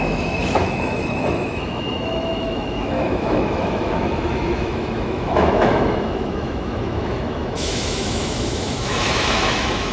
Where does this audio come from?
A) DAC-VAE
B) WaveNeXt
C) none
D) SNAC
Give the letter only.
A